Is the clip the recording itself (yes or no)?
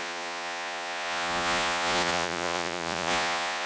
no